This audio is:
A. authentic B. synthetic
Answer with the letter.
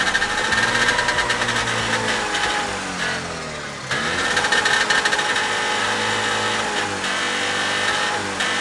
A